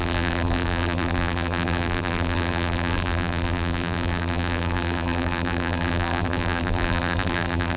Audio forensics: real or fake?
fake